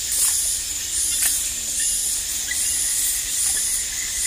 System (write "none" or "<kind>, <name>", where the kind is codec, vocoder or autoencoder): none